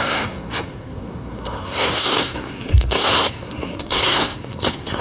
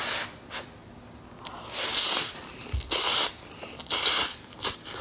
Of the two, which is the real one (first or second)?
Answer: second